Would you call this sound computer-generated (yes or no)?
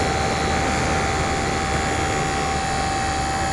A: no